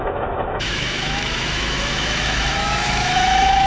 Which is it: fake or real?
fake